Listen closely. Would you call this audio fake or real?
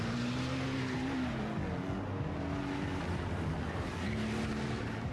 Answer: real